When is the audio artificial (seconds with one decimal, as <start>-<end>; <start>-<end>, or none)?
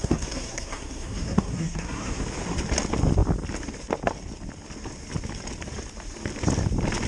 0.0-2.2